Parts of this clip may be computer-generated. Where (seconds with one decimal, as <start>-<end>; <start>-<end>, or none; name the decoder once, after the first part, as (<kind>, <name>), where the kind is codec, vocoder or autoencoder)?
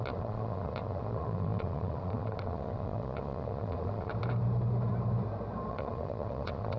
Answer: 0.0-4.1 (vocoder, Vocos); 5.7-6.8